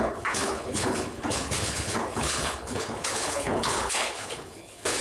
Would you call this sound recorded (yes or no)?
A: no